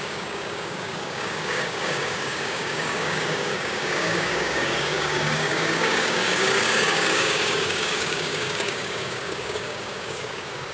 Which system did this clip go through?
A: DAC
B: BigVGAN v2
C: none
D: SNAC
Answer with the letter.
A